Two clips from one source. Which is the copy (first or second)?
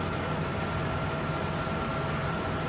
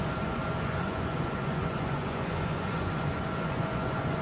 second